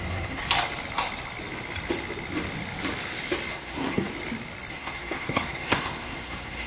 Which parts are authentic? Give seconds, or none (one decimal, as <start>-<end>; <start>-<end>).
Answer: 0.4-3.5; 4.1-4.7